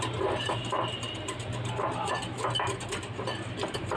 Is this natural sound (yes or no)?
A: yes